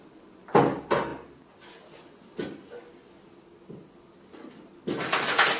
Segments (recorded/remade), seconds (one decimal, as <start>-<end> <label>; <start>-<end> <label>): 0.0-5.6 recorded